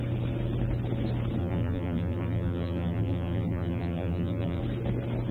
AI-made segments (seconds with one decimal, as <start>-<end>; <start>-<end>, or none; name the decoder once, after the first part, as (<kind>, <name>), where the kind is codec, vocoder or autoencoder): 1.4-4.6 (vocoder, BigVGAN v2)